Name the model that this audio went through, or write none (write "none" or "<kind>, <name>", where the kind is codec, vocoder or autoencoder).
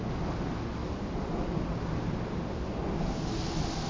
none